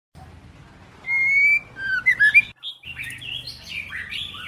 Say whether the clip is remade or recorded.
recorded